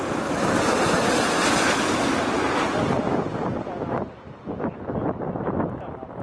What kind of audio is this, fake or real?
real